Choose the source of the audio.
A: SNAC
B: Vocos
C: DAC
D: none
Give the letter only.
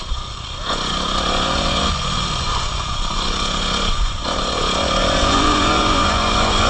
B